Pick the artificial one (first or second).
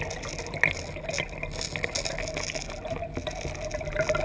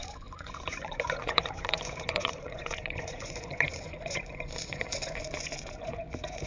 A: second